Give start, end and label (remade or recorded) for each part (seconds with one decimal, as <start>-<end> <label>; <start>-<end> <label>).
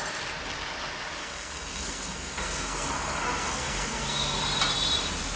0.0-1.2 recorded; 1.2-4.4 remade; 4.4-5.4 recorded